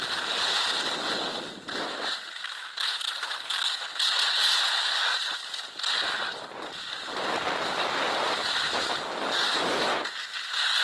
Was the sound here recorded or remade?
recorded